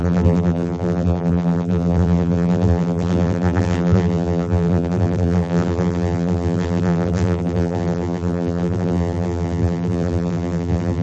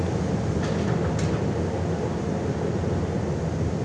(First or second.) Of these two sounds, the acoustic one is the second